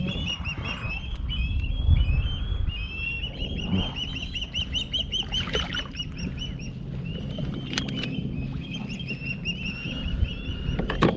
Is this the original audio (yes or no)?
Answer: yes